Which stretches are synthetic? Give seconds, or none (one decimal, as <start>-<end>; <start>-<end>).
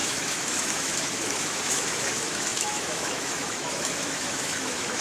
0.0-5.0